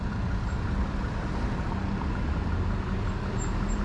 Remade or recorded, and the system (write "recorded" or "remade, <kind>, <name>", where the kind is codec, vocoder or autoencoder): recorded